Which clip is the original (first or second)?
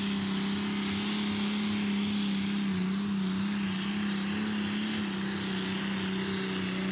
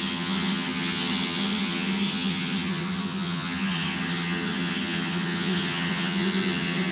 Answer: first